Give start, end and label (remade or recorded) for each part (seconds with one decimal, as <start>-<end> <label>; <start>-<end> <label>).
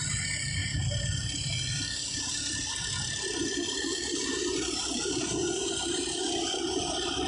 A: 0.0-7.3 remade